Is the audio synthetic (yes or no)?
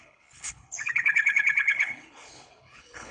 yes